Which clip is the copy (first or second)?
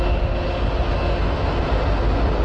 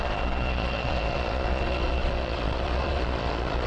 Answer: second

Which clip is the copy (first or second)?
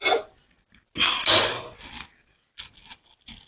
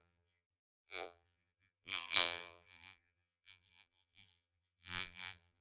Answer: second